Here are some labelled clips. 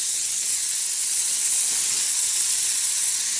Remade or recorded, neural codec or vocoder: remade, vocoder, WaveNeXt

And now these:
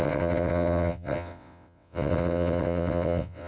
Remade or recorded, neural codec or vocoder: remade, vocoder, WaveNeXt